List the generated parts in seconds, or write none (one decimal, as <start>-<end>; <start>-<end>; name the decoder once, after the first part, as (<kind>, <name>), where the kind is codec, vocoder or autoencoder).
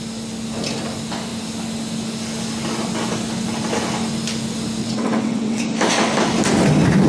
4.8-5.6 (vocoder, WaveNeXt)